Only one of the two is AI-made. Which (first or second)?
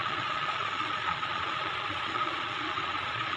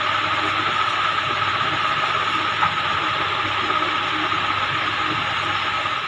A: first